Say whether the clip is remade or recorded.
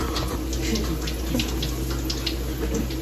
recorded